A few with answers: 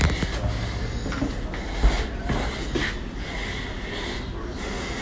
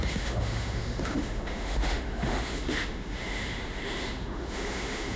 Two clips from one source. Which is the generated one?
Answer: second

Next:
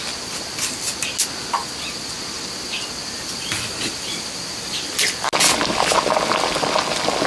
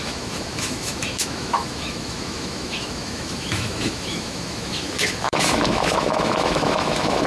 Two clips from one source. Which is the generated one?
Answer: second